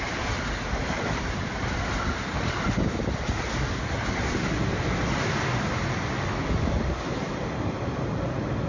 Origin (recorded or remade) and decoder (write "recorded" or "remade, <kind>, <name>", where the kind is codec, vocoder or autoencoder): recorded